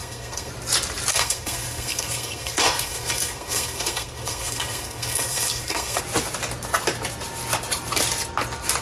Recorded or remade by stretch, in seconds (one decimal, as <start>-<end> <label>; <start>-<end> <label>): 0.0-0.5 remade; 0.5-1.1 recorded; 1.1-6.0 remade; 6.0-8.8 recorded

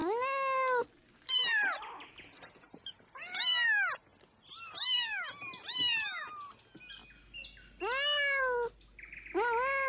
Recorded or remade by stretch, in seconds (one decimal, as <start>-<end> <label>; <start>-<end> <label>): 0.0-9.9 recorded

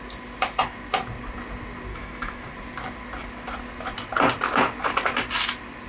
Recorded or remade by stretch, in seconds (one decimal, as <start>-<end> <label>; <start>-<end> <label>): 0.0-1.9 recorded; 1.9-2.5 remade; 2.5-5.9 recorded

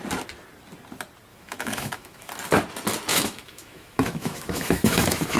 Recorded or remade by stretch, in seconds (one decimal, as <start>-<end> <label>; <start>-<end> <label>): 0.0-1.3 recorded; 1.3-2.3 remade; 2.3-3.1 recorded; 3.1-5.4 remade

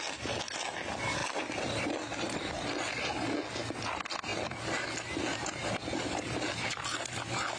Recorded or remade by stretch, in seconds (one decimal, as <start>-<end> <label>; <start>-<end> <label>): 0.0-7.6 recorded

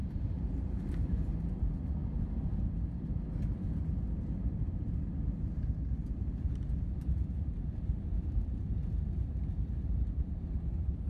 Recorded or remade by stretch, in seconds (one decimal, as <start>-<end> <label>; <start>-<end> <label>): 0.0-2.0 remade; 2.0-6.0 recorded; 6.0-11.1 remade